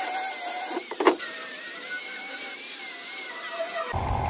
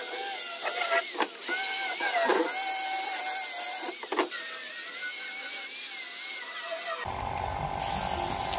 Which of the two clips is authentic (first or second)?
second